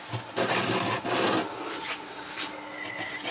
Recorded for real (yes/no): yes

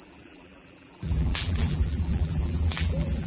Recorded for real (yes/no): no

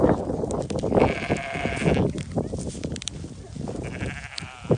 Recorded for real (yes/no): yes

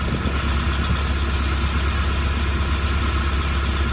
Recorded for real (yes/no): yes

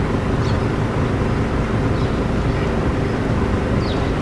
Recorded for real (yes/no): yes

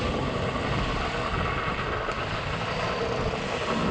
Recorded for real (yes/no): yes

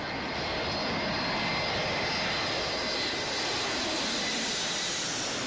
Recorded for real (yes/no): yes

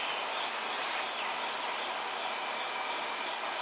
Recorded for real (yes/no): yes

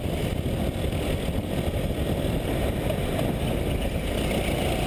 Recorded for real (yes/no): yes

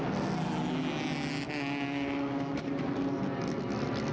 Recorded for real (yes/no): yes